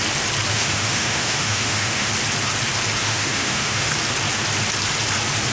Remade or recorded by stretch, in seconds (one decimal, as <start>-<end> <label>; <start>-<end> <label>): 0.0-0.5 recorded; 0.5-2.1 remade; 2.1-3.0 recorded; 3.0-3.9 remade; 3.9-5.5 recorded

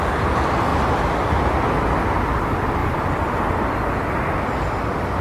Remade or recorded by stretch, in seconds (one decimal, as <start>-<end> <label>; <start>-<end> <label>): 0.0-2.8 recorded; 2.8-3.3 remade; 3.3-5.2 recorded

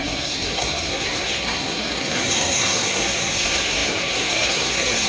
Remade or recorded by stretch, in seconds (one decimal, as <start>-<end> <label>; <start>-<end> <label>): 0.0-5.1 remade

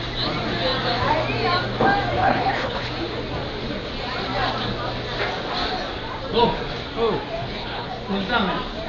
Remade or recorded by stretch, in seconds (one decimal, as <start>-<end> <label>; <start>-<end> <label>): 0.0-2.2 recorded; 2.2-2.9 remade; 2.9-7.4 recorded; 7.4-7.9 remade; 7.9-8.9 recorded

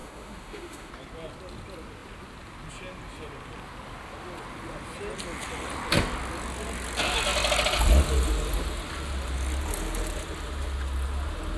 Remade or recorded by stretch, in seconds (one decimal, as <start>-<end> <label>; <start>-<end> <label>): 0.0-0.9 remade; 0.9-11.6 recorded